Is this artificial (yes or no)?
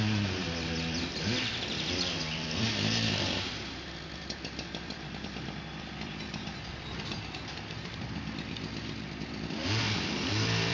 yes